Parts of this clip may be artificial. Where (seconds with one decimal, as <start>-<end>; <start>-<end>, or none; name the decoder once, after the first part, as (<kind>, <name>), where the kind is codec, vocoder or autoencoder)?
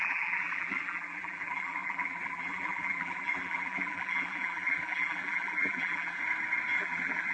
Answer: 0.0-6.2 (vocoder, BigVGAN v2); 6.8-7.3